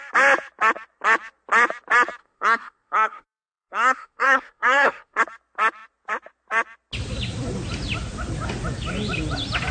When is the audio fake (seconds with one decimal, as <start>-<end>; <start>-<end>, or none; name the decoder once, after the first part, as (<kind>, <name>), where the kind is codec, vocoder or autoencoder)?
2.2-5.2 (codec, SNAC)